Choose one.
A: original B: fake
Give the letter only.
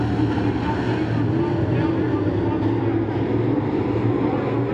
A